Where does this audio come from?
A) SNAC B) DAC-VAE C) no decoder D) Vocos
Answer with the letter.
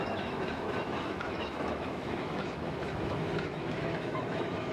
B